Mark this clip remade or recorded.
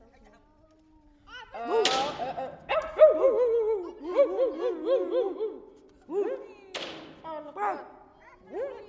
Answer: recorded